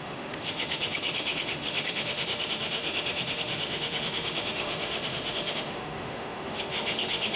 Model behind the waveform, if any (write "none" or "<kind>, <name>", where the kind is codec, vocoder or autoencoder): autoencoder, DAC-VAE